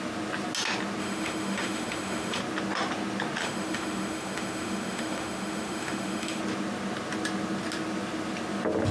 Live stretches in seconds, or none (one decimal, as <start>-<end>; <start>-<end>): 0.0-1.0; 2.4-3.4; 6.4-8.9